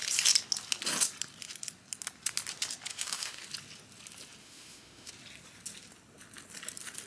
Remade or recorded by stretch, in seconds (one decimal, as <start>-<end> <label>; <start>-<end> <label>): 0.0-2.9 recorded; 2.9-3.4 remade; 3.4-4.4 recorded; 4.4-5.1 remade; 5.1-7.1 recorded